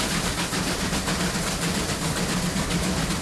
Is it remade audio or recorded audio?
recorded